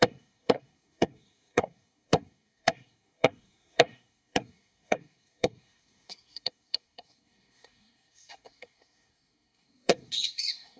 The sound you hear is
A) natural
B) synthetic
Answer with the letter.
B